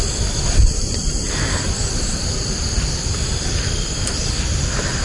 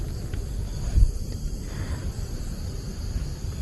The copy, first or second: first